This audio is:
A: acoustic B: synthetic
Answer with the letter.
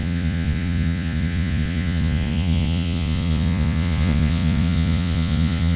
B